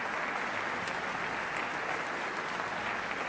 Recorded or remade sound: recorded